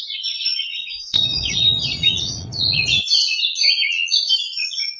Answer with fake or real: fake